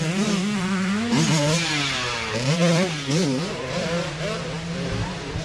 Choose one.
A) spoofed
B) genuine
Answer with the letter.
A